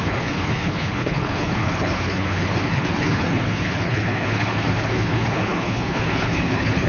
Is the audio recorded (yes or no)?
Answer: no